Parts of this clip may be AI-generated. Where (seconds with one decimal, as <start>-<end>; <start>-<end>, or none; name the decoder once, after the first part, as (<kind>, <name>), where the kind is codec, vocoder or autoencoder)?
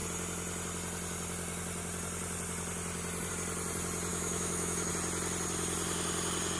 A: 4.1-4.9 (autoencoder, DAC-VAE)